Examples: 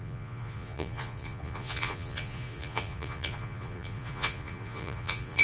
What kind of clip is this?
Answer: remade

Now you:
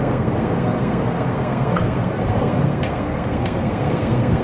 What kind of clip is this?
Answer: remade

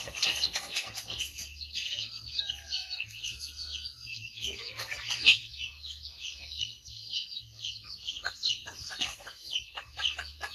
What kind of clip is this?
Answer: remade